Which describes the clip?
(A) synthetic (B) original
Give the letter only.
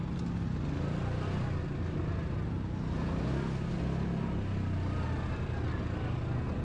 B